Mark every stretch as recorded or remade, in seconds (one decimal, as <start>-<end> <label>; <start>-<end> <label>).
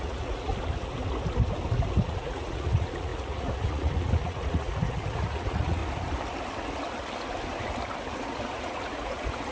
0.0-0.5 remade; 0.5-2.0 recorded; 2.0-5.8 remade; 5.8-8.1 recorded; 8.1-9.5 remade